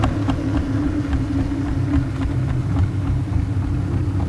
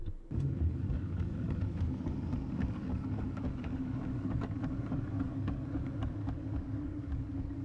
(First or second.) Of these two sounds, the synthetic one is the second